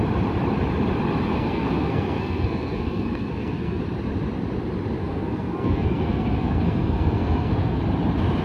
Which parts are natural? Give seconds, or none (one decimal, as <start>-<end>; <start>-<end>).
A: 0.0-1.3; 3.8-5.0; 7.8-8.4